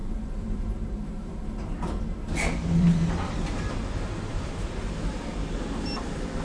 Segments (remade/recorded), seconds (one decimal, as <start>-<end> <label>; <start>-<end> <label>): 0.0-3.1 remade; 3.1-4.3 recorded; 4.3-4.8 remade; 4.8-6.4 recorded